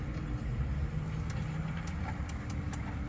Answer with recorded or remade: recorded